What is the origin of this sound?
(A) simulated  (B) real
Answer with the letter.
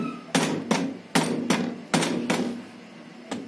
B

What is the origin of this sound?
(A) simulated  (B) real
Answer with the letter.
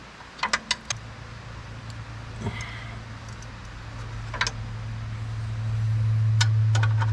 B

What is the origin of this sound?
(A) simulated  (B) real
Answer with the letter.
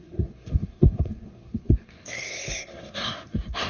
A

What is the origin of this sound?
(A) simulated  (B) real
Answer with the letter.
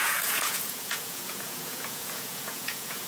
A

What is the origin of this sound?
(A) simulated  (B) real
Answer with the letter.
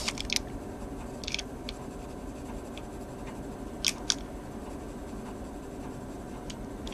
B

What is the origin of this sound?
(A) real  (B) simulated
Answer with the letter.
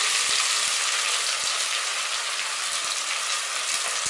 A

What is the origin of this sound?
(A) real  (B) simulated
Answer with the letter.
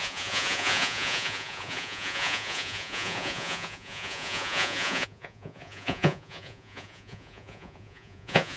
B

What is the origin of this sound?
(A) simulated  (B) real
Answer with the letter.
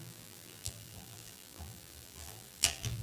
A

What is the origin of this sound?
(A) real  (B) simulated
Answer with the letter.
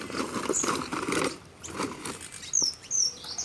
A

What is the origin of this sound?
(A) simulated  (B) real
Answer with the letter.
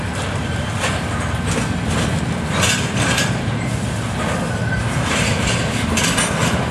B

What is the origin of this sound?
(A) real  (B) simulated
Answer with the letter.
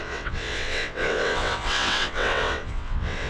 B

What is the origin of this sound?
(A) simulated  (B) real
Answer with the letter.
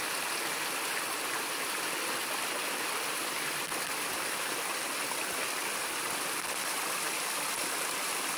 B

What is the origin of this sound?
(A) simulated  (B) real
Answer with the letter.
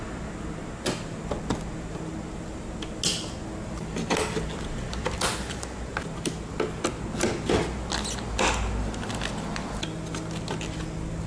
B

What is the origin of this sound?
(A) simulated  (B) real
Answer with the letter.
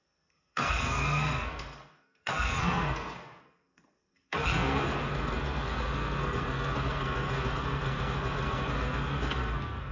A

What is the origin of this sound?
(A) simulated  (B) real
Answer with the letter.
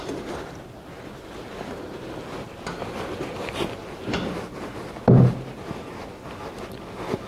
B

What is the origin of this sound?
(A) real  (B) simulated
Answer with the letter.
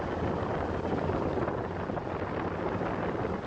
A